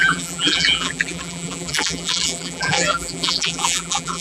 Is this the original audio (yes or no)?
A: no